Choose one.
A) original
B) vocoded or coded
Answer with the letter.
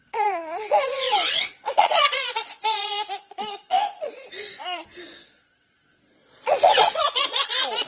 B